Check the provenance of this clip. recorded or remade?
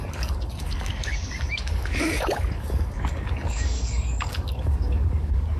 remade